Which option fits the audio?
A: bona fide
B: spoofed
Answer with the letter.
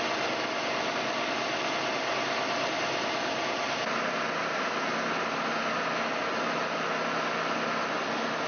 A